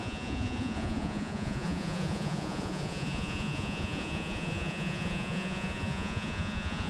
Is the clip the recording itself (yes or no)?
no